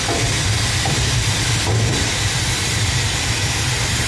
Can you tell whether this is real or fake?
fake